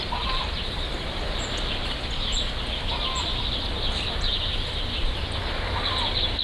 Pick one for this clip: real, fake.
fake